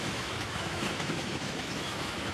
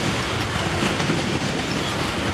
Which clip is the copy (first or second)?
first